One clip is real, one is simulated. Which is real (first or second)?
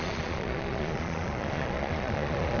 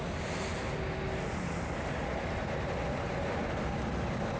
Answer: second